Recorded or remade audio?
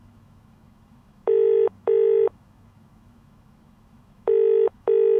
remade